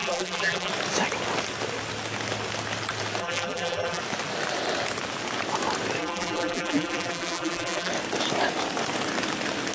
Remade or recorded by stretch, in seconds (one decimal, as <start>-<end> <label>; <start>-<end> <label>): 0.0-0.7 remade; 0.7-3.2 recorded; 3.2-4.0 remade; 4.0-6.0 recorded; 6.0-7.9 remade; 7.9-9.7 recorded